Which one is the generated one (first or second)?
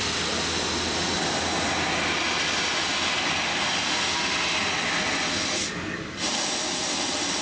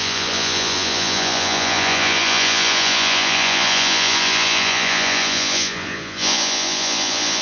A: second